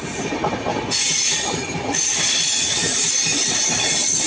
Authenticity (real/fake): real